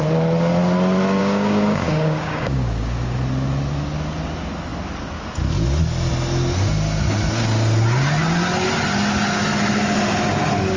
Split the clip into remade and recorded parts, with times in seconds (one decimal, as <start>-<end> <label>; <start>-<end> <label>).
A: 0.0-1.2 recorded; 1.2-3.2 remade; 3.2-10.8 recorded